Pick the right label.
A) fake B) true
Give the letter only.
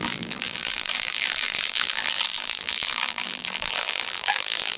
A